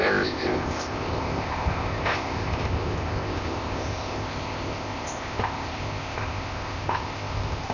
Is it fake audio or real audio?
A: fake